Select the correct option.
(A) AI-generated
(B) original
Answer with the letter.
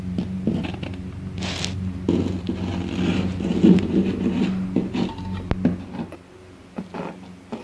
B